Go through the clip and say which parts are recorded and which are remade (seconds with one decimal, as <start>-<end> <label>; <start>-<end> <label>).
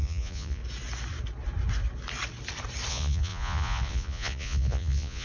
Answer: 0.0-0.6 remade; 0.6-2.9 recorded; 2.9-5.2 remade